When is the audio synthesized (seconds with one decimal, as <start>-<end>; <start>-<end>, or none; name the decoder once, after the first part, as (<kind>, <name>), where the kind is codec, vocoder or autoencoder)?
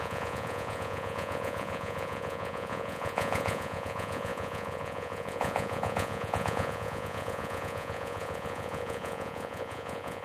0.0-10.2 (vocoder, Vocos)